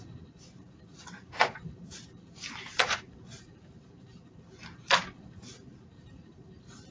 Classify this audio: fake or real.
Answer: fake